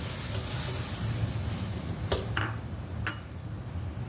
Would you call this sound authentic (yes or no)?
yes